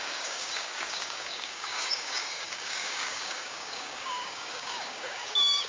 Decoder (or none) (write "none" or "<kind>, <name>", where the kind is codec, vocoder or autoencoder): codec, DAC